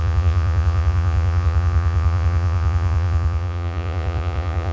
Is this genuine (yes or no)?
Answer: no